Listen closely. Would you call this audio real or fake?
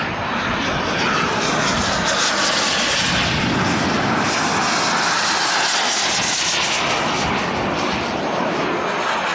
real